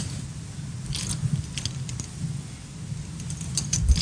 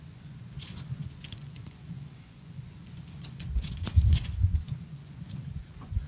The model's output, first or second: second